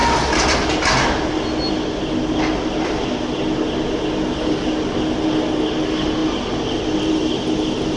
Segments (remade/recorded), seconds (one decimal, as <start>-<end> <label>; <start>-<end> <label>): 0.0-8.0 recorded